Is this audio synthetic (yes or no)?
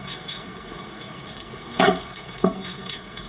yes